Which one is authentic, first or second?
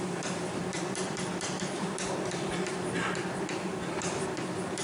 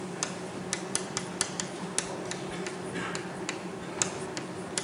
second